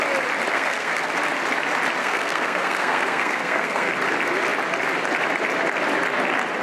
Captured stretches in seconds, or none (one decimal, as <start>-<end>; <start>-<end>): 0.0-0.5; 1.1-2.0; 3.9-6.6